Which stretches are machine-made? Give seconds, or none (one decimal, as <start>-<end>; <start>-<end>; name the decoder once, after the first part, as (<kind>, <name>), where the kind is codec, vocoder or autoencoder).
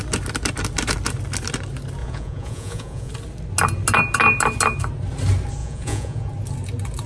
2.0-3.1 (vocoder, Vocos); 5.6-6.3